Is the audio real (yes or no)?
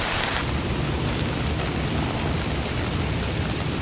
yes